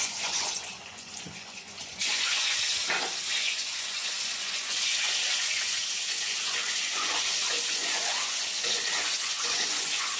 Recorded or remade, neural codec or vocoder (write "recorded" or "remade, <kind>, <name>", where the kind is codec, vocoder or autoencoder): remade, vocoder, Vocos